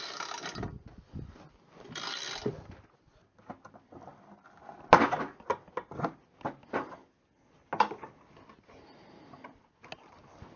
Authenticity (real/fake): real